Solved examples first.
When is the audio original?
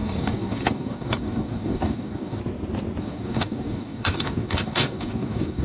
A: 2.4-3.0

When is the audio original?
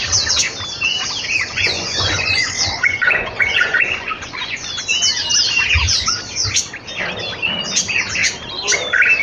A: 0.0-1.5; 4.8-9.2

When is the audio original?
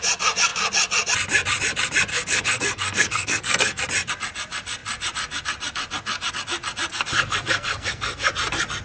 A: 0.0-2.1; 3.8-6.9; 8.3-8.8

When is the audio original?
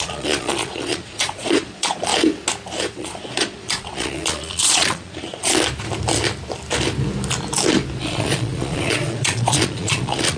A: 2.1-2.9; 5.5-8.0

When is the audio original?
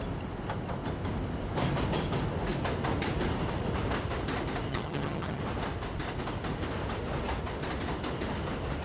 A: 0.0-4.7; 5.4-8.8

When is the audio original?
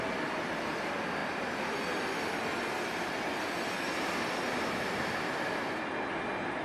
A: 0.0-6.6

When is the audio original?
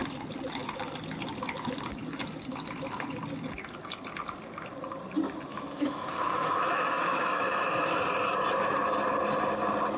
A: 0.0-5.5; 8.0-10.0